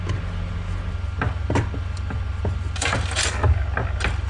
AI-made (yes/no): no